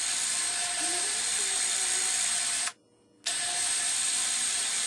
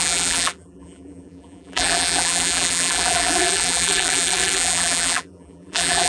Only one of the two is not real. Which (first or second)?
second